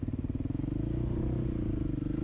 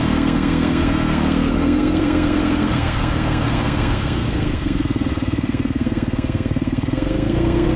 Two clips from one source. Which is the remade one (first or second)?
second